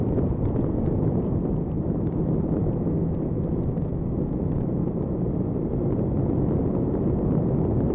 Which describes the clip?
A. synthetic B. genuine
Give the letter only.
B